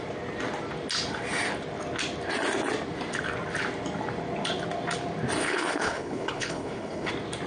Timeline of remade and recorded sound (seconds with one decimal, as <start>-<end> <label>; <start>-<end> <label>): 0.0-5.4 recorded; 5.4-7.1 remade; 7.1-7.5 recorded